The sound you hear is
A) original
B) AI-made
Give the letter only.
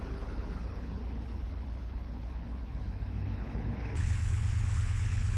B